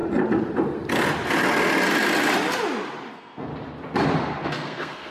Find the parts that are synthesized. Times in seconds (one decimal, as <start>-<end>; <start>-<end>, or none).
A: 3.1-3.5; 4.4-5.1